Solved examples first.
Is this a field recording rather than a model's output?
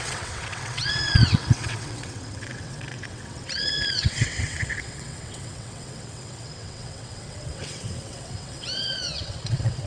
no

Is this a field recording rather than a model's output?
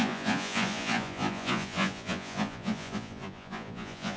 no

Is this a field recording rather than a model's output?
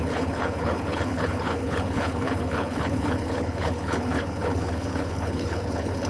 no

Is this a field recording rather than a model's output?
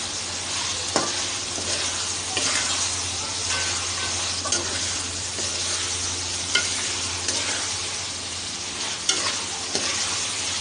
yes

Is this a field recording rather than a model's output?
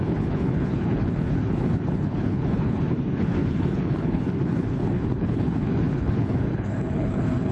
no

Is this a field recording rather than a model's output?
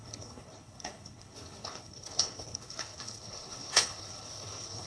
no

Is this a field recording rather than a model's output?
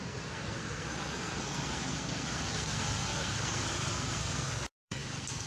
no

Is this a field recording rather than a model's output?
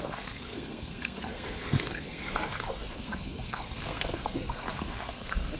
no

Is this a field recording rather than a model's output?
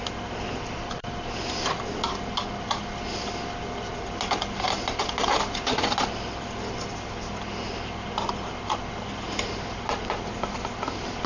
yes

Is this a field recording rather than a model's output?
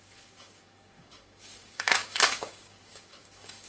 no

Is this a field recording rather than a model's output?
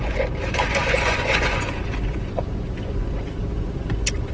no